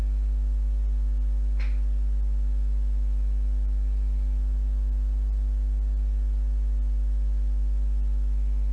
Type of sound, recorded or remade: recorded